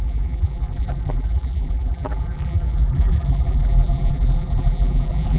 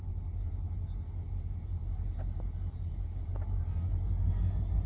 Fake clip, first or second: first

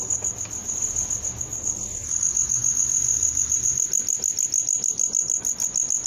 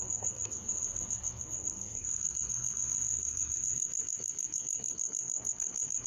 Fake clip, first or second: second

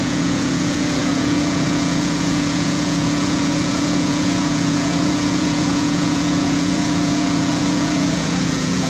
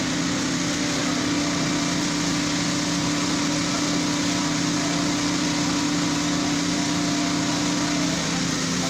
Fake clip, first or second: first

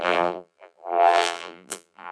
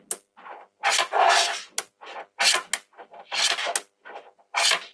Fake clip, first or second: first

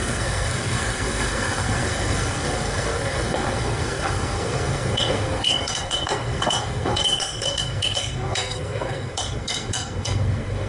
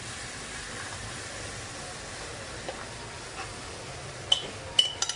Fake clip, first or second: first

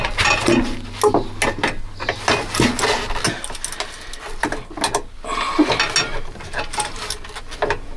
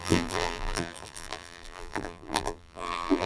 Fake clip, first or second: second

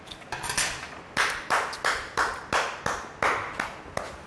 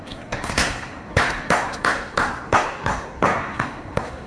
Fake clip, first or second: second